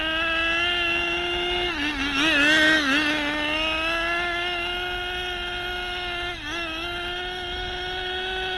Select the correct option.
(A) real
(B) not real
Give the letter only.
A